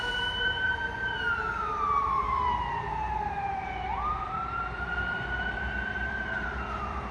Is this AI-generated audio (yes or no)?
yes